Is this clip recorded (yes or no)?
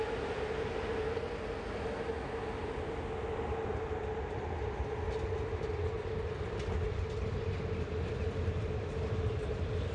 yes